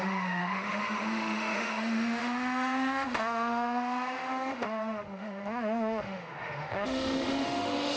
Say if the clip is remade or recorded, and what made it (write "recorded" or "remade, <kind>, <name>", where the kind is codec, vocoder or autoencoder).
remade, autoencoder, DAC-VAE